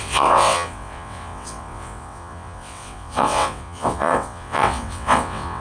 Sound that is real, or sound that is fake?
fake